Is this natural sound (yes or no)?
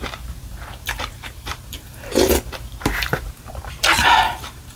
no